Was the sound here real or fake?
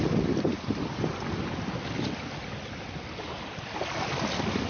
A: real